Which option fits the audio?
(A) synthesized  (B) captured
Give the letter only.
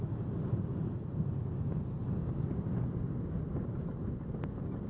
B